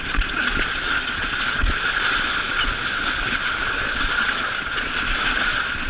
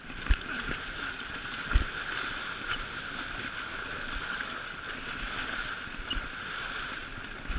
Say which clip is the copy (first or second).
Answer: first